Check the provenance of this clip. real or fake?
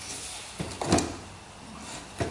real